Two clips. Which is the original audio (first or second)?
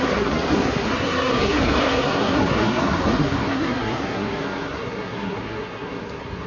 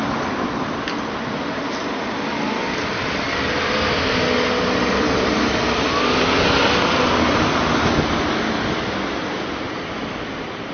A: second